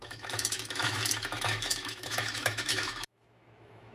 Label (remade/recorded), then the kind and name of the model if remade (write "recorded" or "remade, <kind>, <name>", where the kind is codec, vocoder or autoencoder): remade, autoencoder, DAC-VAE